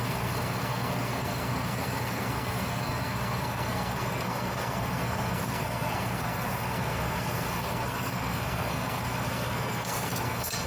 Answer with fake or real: fake